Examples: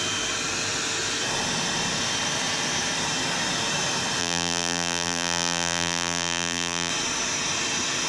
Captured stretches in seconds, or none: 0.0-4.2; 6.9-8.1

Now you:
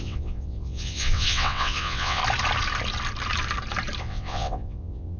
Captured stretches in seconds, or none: 2.2-4.0

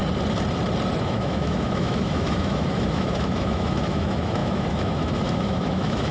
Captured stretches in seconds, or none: 0.0-1.0

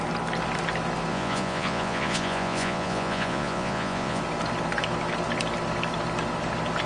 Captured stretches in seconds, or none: 0.0-1.1; 4.2-6.9